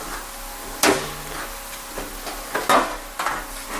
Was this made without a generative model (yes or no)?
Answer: yes